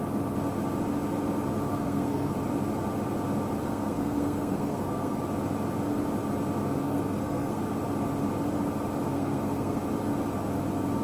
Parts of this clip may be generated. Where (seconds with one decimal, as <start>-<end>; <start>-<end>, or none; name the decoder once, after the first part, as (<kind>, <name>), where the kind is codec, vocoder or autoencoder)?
1.7-2.3 (codec, SNAC); 3.6-5.2; 6.8-7.6; 9.1-9.8